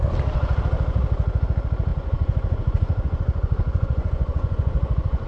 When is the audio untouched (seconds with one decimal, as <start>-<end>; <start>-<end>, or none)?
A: 0.0-1.9